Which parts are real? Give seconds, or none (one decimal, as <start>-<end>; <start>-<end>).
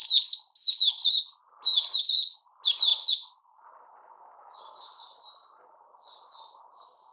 0.0-7.1